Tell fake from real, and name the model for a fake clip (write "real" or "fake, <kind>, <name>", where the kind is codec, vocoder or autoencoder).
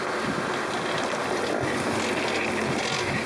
real